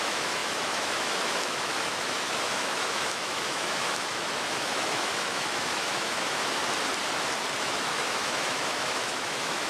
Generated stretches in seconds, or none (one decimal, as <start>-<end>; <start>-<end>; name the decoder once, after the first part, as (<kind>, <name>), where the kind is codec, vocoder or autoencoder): 0.0-6.6 (autoencoder, DAC-VAE); 7.6-9.7